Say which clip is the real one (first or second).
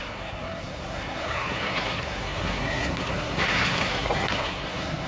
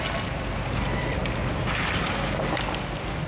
second